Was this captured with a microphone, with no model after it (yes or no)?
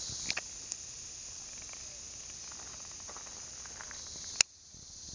yes